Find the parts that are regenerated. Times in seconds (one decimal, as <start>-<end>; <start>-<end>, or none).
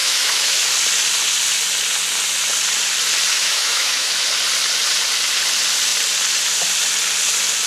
0.0-0.7; 3.3-4.1